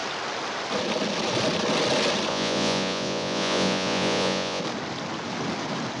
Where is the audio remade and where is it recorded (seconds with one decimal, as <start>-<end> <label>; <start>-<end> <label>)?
0.0-2.3 recorded; 2.3-4.6 remade; 4.6-6.0 recorded